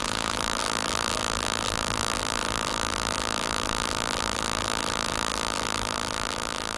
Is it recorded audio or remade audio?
remade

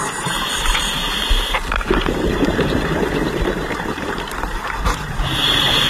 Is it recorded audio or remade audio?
remade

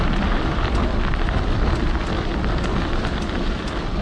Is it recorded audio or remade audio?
remade